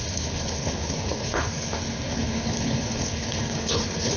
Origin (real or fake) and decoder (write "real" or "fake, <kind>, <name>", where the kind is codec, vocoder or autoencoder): fake, codec, HILCodec